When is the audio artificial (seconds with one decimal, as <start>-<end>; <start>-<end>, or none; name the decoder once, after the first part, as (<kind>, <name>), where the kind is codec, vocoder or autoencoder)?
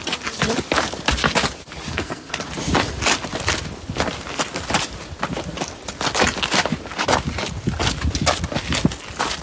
1.9-2.4 (codec, SNAC)